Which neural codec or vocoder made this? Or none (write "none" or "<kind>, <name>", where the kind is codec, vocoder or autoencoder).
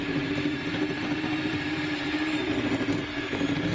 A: vocoder, BigVGAN v2